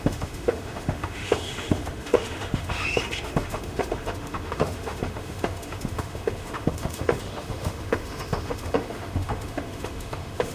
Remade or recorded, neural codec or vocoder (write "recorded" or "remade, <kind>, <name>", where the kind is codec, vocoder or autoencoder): remade, autoencoder, DAC-VAE